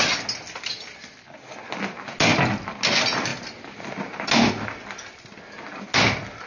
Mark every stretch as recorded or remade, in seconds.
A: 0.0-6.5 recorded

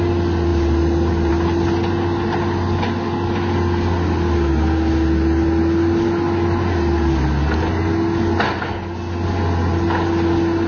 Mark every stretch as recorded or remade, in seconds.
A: 0.0-10.7 recorded

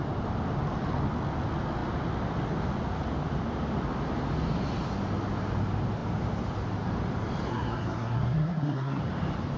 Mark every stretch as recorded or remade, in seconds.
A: 0.0-7.5 recorded; 7.5-9.0 remade; 9.0-9.6 recorded

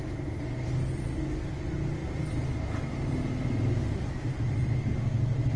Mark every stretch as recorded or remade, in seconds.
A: 0.0-5.6 recorded

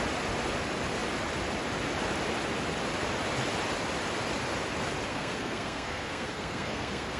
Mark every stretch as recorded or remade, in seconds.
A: 0.0-5.1 recorded; 5.1-7.2 remade

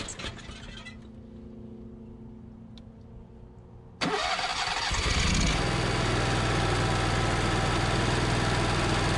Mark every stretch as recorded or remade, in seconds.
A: 0.0-9.2 recorded

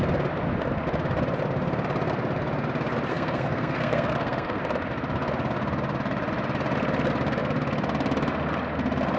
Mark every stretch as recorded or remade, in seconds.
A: 0.0-3.1 recorded; 3.1-4.6 remade; 4.6-9.2 recorded

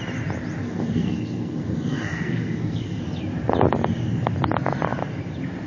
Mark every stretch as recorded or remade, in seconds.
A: 0.0-0.6 recorded; 0.6-3.0 remade; 3.0-5.7 recorded